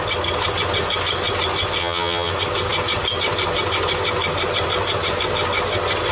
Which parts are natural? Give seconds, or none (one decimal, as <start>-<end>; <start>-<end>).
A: 0.0-1.8; 2.3-6.1